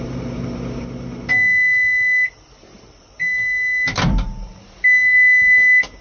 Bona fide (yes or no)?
yes